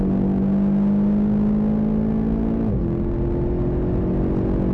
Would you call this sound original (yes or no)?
yes